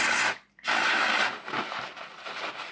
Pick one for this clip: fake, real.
real